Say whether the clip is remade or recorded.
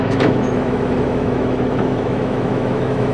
remade